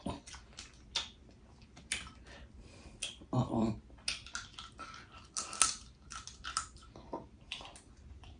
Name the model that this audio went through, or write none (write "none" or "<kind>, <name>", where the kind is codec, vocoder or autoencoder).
none